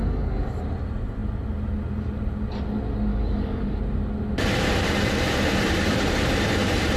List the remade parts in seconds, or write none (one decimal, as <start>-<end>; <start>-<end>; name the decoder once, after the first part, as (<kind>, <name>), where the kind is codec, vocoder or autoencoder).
0.0-0.5 (codec, DAC); 3.1-3.8